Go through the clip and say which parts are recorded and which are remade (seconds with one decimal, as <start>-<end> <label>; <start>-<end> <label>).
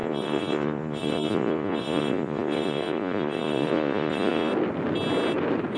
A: 0.0-4.5 remade; 4.5-5.8 recorded